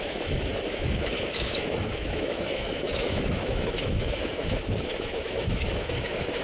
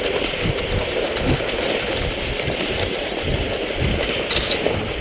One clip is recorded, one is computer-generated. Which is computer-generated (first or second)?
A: first